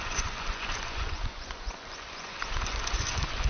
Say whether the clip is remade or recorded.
remade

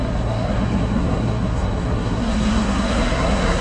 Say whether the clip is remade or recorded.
remade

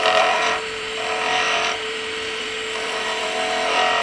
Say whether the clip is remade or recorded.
remade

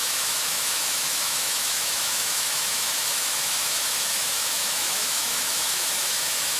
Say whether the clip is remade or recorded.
remade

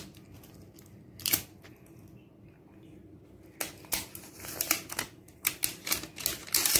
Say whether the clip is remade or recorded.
recorded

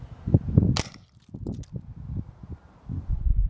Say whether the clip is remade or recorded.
recorded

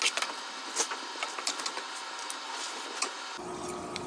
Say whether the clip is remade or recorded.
recorded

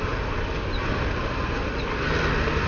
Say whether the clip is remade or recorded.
recorded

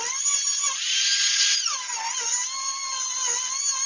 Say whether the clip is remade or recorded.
recorded